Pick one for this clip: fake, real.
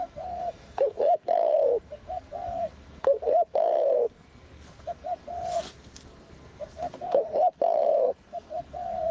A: fake